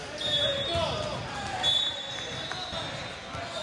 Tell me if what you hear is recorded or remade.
recorded